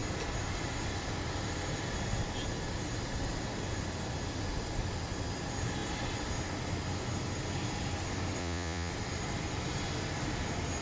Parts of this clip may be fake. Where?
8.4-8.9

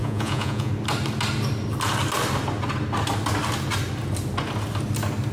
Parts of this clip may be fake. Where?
0.0-0.7